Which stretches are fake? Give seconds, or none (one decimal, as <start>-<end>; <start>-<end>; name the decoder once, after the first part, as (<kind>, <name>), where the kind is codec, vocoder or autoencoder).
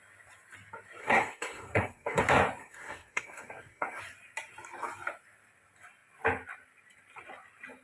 1.0-2.2 (codec, SNAC); 2.6-4.0